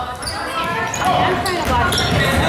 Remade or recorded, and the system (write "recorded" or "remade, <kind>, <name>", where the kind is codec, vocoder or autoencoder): recorded